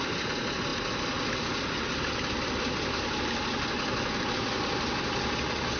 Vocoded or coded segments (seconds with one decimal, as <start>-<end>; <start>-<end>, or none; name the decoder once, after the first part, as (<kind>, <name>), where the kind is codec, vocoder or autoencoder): none